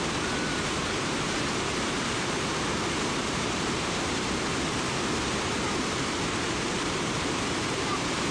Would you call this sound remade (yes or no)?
yes